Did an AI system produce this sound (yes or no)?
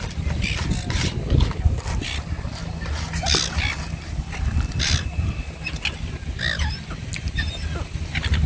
no